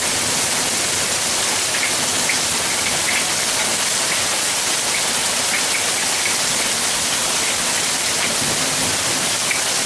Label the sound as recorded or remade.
recorded